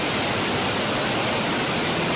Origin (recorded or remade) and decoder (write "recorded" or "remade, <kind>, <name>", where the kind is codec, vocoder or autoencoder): recorded